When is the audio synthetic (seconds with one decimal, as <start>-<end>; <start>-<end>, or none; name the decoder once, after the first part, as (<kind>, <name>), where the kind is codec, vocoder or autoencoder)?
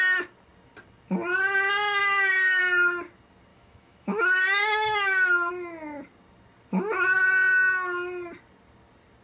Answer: 2.0-2.6 (autoencoder, DAC-VAE); 3.5-5.5